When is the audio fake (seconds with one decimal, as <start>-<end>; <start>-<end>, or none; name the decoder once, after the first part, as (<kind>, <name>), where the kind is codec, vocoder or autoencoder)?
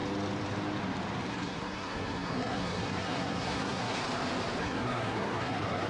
1.3-4.0 (codec, SNAC); 4.6-5.9